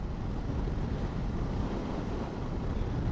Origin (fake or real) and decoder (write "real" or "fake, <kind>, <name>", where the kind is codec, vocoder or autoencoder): real